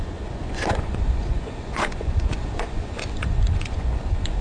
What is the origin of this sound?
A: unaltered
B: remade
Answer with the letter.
B